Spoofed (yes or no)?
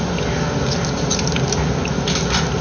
no